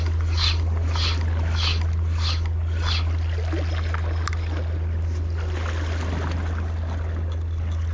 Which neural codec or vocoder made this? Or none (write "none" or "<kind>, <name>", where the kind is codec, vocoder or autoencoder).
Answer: none